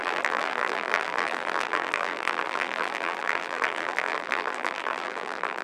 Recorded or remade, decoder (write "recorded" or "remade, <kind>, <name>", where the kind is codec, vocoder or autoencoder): remade, vocoder, BigVGAN v2